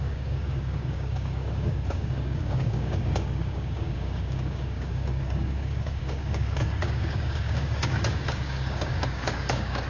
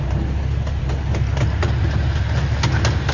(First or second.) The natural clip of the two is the second